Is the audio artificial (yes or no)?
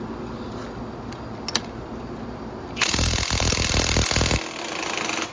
no